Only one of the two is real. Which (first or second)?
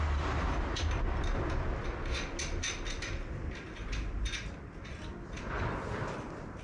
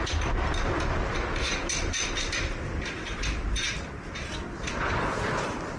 first